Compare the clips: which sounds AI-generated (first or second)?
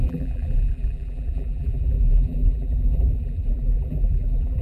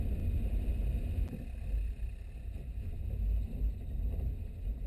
first